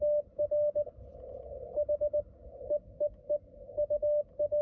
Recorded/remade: recorded